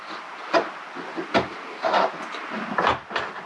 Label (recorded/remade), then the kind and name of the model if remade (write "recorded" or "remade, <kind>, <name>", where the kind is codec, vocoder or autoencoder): recorded